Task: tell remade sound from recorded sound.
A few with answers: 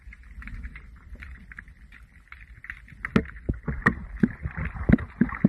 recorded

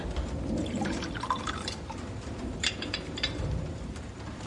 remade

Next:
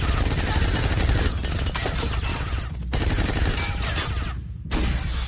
recorded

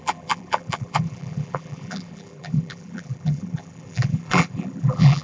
remade